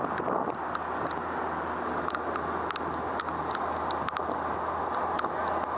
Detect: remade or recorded recorded